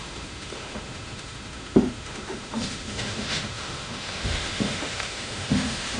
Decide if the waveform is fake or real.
fake